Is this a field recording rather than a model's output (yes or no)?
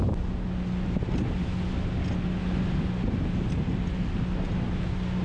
yes